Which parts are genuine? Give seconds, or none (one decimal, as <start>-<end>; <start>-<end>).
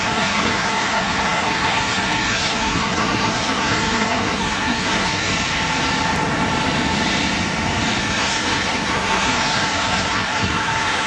5.3-8.0